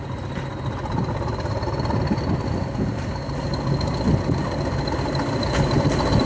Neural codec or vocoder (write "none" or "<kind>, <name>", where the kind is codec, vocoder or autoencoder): none